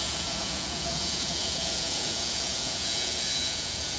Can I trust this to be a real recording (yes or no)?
no